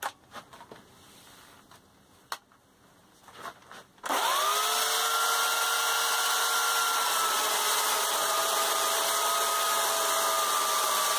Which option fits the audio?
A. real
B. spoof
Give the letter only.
A